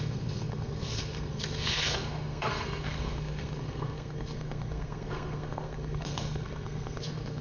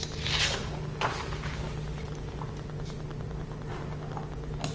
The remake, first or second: first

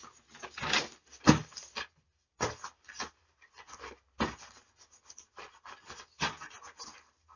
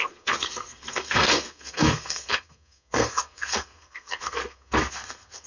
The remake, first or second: second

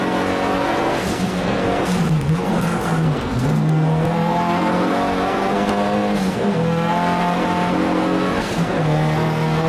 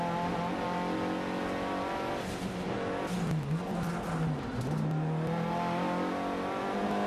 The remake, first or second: first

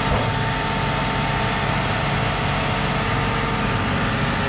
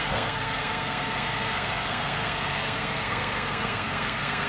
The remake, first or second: second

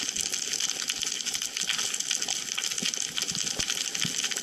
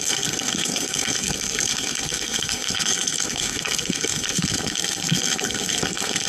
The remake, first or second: second